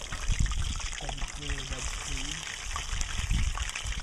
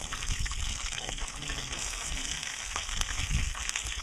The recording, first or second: first